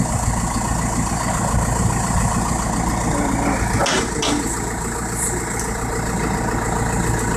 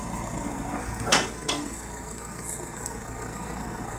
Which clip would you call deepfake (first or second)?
second